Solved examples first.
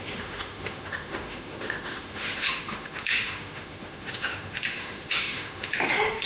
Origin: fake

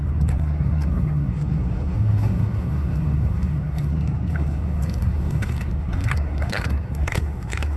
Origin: fake